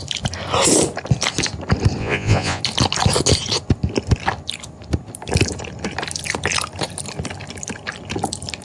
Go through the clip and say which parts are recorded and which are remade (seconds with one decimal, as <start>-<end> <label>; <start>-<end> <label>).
0.0-2.0 recorded; 2.0-2.6 remade; 2.6-8.6 recorded